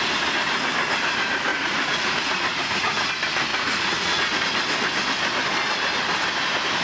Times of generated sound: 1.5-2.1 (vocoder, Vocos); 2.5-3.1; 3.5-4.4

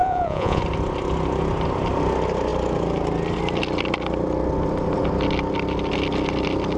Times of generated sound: 0.0-0.6 (vocoder, Vocos)

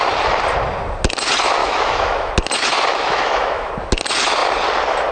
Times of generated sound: 1.6-2.3 (autoencoder, DAC-VAE); 2.9-3.7

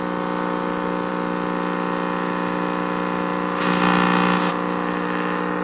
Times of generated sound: none

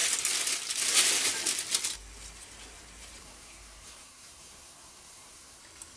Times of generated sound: 3.2-5.6 (codec, SNAC)

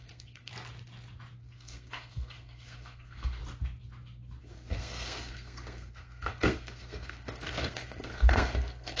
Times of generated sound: 0.0-0.5 (codec, SNAC); 1.4-3.4; 4.4-9.0

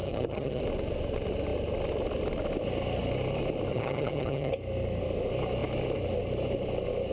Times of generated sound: 0.0-0.6 (vocoder, HiFi-GAN); 3.7-4.5

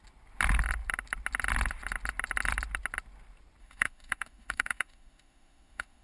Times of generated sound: 3.6-6.0 (autoencoder, DAC-VAE)